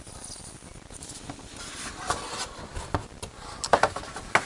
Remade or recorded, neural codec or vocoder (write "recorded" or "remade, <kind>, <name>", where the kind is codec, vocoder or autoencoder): recorded